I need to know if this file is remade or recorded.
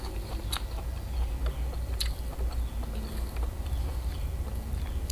recorded